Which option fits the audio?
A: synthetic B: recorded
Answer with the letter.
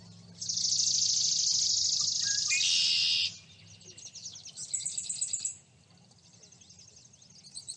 B